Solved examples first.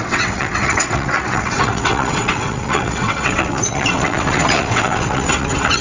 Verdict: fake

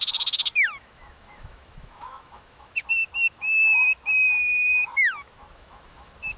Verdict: fake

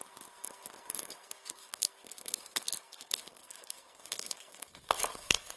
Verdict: fake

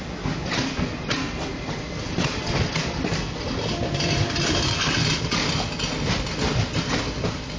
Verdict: real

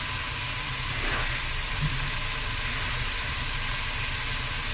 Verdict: real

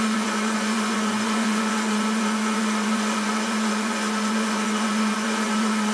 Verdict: fake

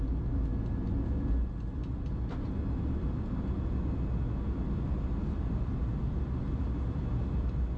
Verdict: real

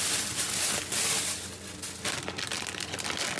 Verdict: real